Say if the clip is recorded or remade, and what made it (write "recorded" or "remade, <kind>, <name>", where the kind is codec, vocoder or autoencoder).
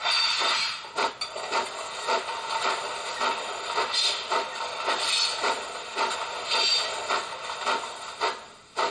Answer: recorded